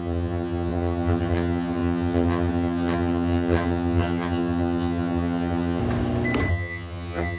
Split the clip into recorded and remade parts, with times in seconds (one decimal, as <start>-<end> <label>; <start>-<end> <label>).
0.0-5.8 remade; 5.8-6.5 recorded; 6.5-7.4 remade